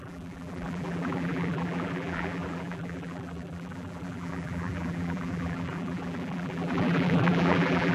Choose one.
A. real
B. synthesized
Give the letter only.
B